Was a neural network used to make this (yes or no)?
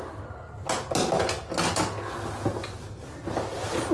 no